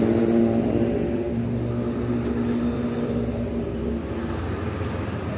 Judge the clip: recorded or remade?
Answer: recorded